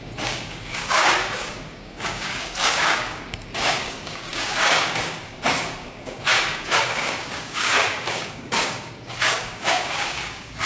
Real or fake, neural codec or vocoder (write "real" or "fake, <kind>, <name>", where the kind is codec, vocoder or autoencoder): fake, codec, DAC